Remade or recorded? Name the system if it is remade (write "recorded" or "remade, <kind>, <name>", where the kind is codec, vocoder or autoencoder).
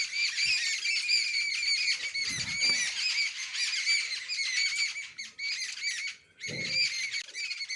recorded